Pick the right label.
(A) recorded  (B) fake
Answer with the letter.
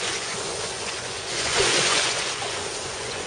B